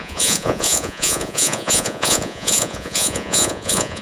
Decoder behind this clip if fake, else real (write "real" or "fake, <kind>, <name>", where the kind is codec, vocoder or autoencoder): fake, vocoder, Vocos